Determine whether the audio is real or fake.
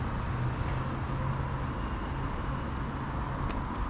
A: real